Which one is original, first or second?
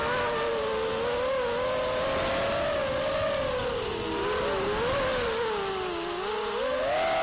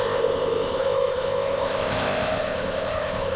first